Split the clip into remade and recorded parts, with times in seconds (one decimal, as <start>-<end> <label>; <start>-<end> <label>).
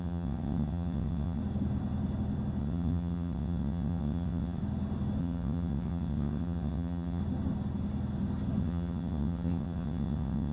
0.0-1.4 remade; 1.4-2.6 recorded; 2.6-4.6 remade; 4.6-5.2 recorded; 5.2-7.2 remade; 7.2-8.6 recorded; 8.6-10.5 remade